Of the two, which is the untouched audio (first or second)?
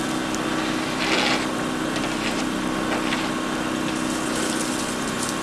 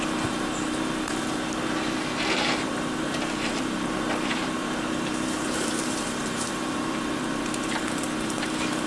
first